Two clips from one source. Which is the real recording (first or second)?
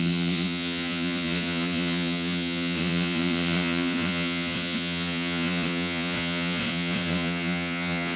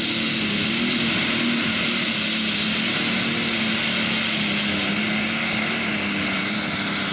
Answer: second